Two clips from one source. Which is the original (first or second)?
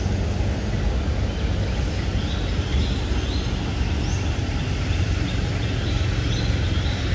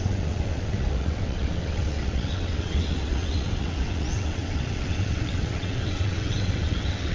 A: first